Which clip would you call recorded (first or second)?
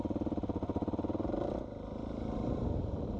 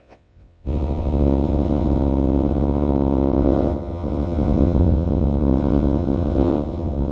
first